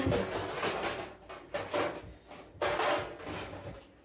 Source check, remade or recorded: recorded